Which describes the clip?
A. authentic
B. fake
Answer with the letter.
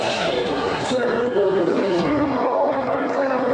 B